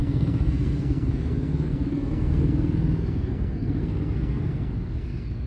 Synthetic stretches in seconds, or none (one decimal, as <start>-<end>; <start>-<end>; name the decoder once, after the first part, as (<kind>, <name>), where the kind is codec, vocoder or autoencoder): 0.0-5.5 (codec, SNAC)